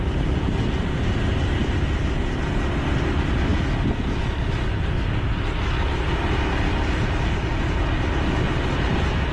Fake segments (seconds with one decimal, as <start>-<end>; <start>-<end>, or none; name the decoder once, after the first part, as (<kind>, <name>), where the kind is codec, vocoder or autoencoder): none